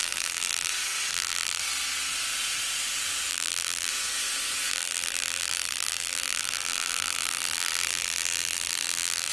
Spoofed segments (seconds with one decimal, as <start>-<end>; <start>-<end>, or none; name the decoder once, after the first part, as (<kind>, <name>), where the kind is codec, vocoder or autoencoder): 0.0-0.7 (vocoder, BigVGAN v2); 1.1-1.6; 3.3-3.9; 4.7-9.3